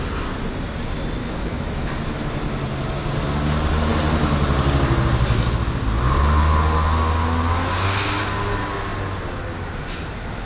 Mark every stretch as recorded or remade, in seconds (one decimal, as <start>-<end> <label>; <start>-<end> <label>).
0.0-1.2 recorded; 1.2-1.9 remade; 1.9-10.5 recorded